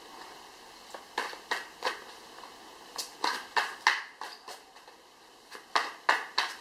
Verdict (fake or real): real